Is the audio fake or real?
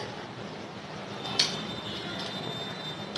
real